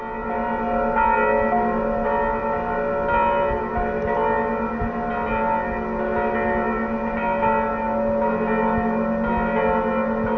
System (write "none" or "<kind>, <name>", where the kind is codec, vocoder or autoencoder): none